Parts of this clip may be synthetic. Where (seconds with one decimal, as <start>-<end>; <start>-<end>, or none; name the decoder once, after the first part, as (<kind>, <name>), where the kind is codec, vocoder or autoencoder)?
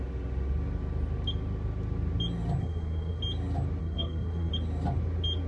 2.6-3.2 (codec, SNAC); 3.8-4.5